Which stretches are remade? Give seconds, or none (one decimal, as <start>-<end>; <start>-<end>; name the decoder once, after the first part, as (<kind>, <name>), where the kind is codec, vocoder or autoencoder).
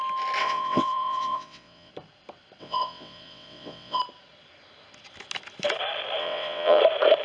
0.4-1.9 (vocoder, WaveNeXt); 2.6-4.0; 6.2-6.8